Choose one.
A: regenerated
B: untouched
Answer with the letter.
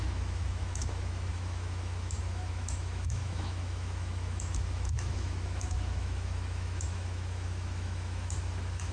A